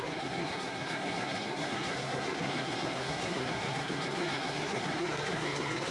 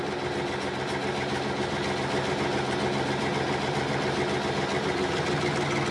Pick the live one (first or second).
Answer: second